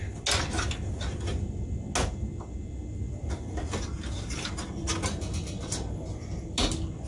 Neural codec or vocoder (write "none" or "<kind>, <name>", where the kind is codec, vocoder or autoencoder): none